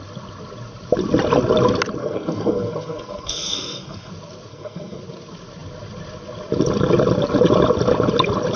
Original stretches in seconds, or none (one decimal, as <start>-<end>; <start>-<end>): 0.0-2.0; 4.1-4.5; 5.0-8.6